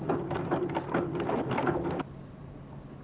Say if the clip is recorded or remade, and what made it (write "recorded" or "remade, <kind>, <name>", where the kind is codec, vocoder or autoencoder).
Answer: recorded